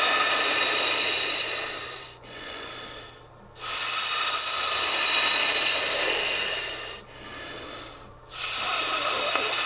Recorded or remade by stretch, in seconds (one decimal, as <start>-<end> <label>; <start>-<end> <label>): 0.0-1.8 recorded; 1.8-2.7 remade; 2.7-9.7 recorded